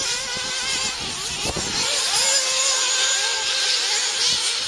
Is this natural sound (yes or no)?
yes